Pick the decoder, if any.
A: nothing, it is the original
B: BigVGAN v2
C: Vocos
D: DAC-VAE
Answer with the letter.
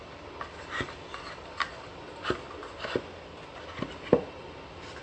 A